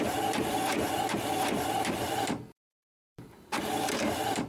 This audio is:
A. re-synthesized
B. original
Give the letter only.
A